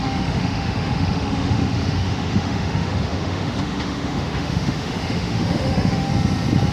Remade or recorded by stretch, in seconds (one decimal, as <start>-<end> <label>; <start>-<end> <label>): 0.0-6.1 remade; 6.1-6.7 recorded